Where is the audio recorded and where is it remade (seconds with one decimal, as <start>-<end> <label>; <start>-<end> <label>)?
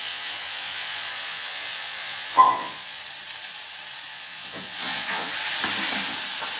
0.0-3.0 remade; 3.0-4.1 recorded; 4.1-5.3 remade; 5.3-6.6 recorded